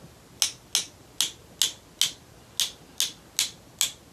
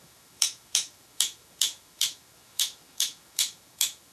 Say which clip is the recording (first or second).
first